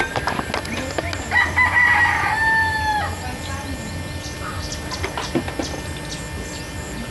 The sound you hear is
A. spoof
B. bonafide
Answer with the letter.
B